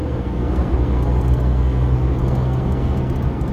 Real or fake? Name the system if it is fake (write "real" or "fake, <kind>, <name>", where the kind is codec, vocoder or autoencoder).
fake, codec, SNAC